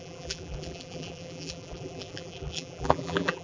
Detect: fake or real fake